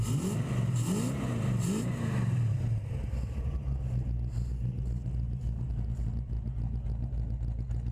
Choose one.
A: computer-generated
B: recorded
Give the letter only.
B